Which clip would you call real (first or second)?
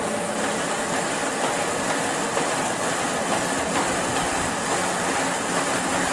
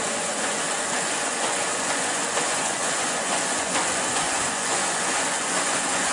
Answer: first